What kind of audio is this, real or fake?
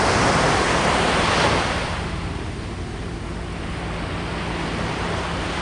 real